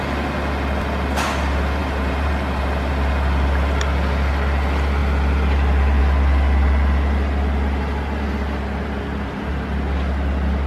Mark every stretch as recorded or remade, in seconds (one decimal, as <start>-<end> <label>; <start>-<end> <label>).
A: 0.0-1.8 recorded; 1.8-2.9 remade; 2.9-10.7 recorded